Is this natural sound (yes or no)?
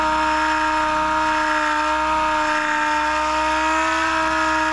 yes